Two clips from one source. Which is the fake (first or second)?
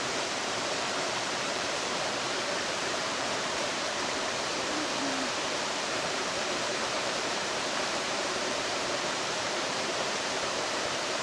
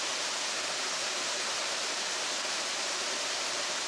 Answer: first